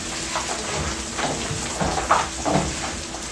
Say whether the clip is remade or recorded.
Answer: recorded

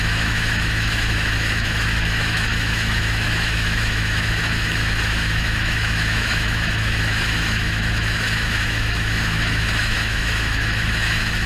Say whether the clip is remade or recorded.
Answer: remade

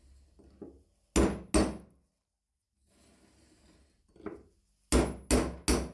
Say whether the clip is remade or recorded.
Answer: recorded